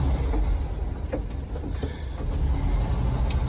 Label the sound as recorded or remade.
recorded